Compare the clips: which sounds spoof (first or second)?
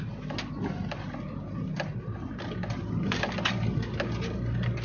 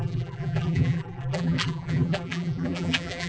second